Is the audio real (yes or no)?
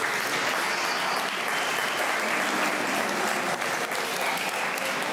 yes